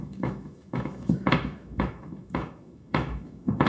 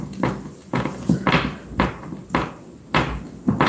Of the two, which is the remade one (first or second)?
first